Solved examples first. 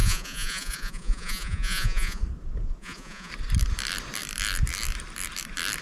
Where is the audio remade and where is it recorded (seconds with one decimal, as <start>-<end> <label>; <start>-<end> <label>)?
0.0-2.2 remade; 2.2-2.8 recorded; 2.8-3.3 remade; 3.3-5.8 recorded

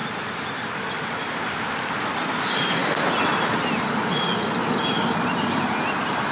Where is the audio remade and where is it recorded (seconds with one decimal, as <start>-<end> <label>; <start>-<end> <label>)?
0.0-6.3 recorded

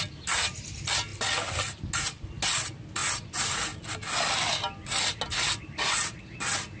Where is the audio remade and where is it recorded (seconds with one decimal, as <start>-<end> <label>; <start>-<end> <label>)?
0.0-6.8 recorded